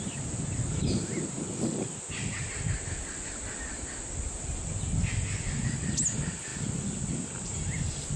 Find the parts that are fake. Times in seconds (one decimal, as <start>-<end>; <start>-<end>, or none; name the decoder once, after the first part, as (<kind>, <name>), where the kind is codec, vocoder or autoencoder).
none